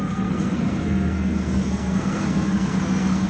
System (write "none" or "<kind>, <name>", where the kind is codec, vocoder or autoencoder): codec, SNAC